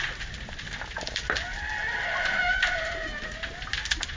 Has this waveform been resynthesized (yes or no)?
no